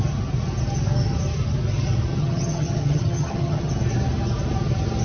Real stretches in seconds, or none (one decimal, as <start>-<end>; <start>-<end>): 0.0-2.1; 3.7-5.0